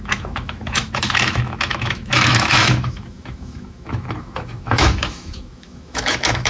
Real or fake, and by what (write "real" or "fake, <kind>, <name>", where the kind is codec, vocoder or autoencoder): fake, autoencoder, DAC-VAE